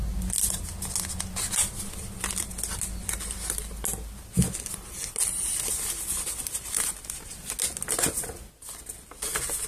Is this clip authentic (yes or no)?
yes